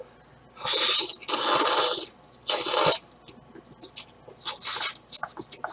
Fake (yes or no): no